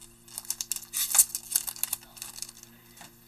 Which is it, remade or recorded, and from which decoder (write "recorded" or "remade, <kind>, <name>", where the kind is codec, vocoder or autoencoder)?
recorded